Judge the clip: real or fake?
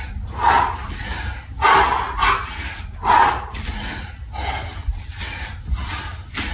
real